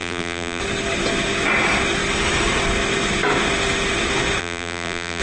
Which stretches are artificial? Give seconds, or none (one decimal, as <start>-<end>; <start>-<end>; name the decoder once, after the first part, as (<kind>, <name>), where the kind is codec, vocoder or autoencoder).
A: 0.0-0.6 (vocoder, BigVGAN v2); 4.4-5.2